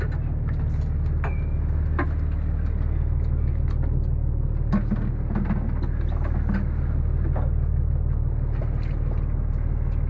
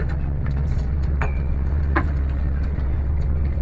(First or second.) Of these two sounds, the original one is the first